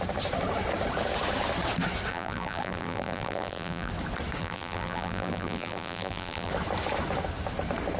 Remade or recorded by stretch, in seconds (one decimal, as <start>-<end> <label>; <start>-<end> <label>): 0.0-2.1 recorded; 2.1-3.9 remade; 3.9-4.4 recorded; 4.4-6.5 remade; 6.5-8.0 recorded